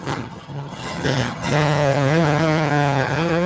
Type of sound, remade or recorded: remade